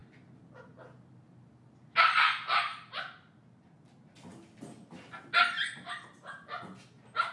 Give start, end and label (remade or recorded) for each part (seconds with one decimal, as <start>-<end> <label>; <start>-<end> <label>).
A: 0.0-3.0 remade; 3.0-7.3 recorded